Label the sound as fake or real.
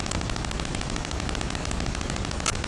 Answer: fake